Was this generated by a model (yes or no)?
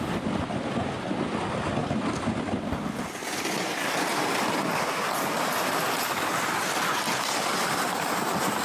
no